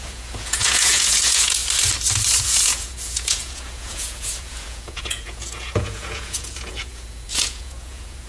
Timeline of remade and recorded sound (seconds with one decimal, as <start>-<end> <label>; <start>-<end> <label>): 0.0-1.6 remade; 1.6-2.4 recorded; 2.4-8.3 remade